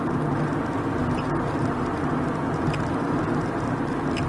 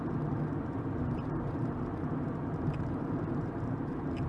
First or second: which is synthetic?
second